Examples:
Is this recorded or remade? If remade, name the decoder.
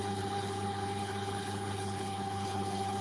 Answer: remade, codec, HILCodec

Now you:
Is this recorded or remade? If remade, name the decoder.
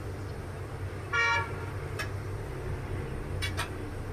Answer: recorded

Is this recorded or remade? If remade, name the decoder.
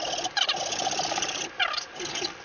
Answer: recorded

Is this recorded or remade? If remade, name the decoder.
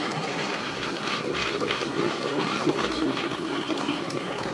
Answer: remade, codec, SNAC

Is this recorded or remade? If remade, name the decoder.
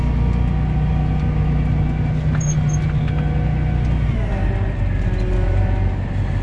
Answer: recorded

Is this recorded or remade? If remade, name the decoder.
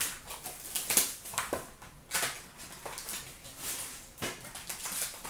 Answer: recorded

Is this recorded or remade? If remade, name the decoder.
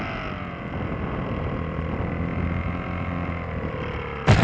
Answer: recorded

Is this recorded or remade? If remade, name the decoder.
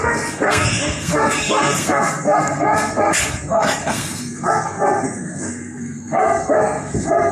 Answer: remade, codec, SNAC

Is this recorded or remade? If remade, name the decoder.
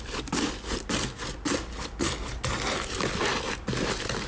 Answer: recorded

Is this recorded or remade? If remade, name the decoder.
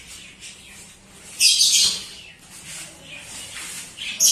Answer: recorded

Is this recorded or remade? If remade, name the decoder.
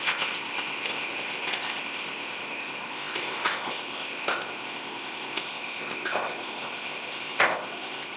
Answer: remade, codec, ZipCodec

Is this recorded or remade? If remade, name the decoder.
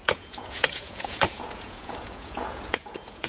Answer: remade, vocoder, Vocos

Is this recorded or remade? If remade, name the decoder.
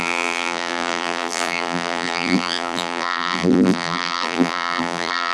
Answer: remade, vocoder, BigVGAN v2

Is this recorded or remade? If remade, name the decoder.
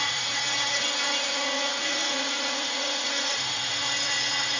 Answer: remade, vocoder, Vocos